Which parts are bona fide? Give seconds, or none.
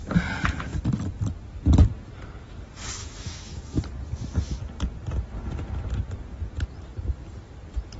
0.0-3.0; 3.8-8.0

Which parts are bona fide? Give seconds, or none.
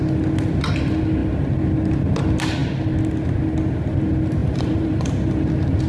0.0-4.4; 5.3-5.9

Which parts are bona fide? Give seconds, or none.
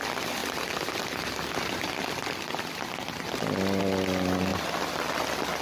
0.0-5.6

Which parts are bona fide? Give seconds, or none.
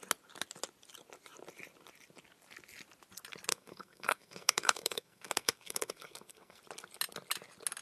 0.0-3.5; 6.6-7.8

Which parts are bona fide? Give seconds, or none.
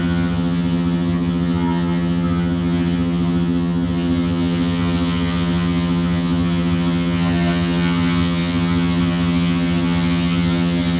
none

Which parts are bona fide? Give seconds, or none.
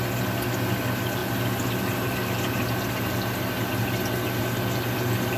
0.0-5.4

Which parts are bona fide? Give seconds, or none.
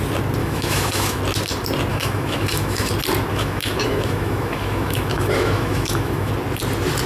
0.0-0.4; 1.2-1.9; 2.9-3.3; 6.3-7.1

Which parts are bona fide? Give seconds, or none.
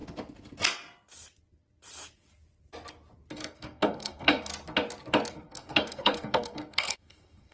0.0-3.3; 4.5-5.3